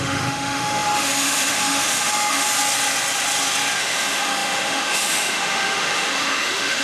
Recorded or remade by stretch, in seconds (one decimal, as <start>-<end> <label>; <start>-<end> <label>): 0.0-2.5 remade; 2.5-3.8 recorded; 3.8-6.8 remade